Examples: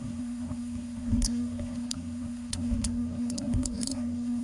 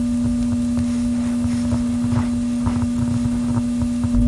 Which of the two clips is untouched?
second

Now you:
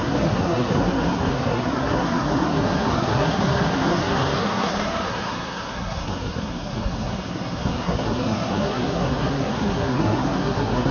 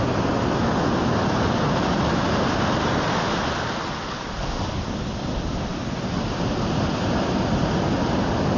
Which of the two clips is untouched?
second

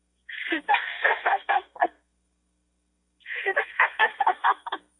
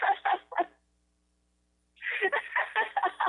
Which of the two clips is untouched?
second